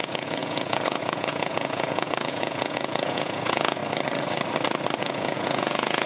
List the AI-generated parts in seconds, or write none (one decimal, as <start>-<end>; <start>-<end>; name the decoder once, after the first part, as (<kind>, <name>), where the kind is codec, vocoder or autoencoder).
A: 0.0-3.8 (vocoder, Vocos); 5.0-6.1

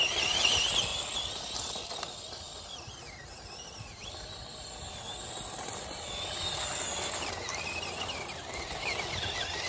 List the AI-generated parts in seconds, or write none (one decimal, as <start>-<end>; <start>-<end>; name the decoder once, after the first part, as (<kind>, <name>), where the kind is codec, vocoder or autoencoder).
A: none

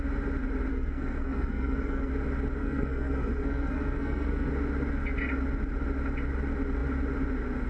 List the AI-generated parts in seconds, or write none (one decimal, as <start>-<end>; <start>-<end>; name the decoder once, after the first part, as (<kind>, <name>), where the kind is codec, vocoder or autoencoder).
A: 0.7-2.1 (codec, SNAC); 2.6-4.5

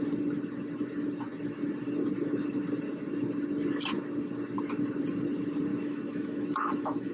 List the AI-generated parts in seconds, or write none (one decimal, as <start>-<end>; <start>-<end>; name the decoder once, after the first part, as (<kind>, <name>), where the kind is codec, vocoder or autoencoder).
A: 5.7-7.1 (autoencoder, DAC-VAE)

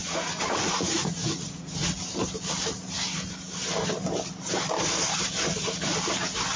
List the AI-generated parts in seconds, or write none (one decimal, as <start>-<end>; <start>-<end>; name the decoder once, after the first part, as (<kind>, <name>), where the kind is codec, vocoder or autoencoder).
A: 0.0-1.9 (vocoder, Vocos)

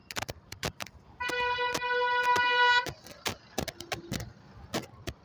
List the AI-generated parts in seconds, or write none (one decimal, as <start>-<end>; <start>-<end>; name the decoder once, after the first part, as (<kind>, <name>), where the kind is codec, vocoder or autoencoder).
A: none

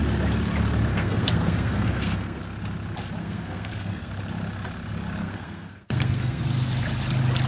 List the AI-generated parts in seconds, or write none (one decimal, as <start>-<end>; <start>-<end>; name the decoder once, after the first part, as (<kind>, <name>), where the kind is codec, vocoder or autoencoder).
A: 0.9-2.4 (codec, SNAC); 3.2-4.1; 5.2-6.4

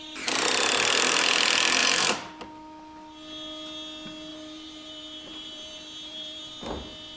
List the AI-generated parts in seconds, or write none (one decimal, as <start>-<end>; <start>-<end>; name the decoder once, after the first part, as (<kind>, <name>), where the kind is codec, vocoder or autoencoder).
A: 1.8-2.4 (vocoder, BigVGAN v2); 4.3-6.4